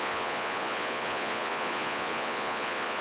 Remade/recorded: remade